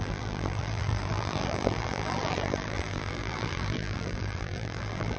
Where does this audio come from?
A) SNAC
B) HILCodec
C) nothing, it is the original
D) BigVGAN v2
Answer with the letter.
D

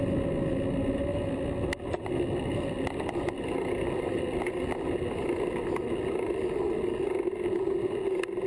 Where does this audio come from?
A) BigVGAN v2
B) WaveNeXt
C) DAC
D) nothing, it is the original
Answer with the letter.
D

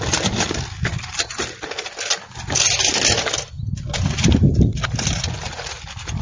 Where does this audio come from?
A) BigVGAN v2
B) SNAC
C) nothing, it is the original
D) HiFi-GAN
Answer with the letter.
C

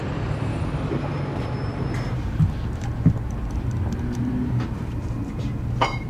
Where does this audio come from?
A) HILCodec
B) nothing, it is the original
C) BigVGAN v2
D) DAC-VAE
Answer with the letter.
C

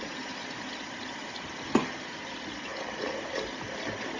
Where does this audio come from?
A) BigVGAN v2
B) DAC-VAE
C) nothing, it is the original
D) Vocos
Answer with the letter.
C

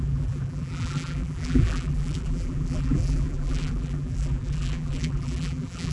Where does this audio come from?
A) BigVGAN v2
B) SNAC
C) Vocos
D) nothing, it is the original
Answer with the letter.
A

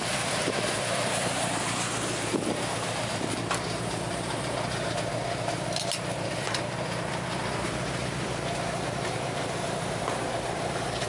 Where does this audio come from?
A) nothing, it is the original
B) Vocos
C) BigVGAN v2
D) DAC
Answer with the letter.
C